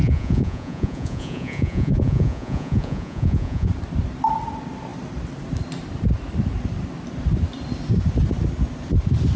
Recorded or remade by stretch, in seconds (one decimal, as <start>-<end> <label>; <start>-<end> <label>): 0.0-3.7 remade; 3.7-9.4 recorded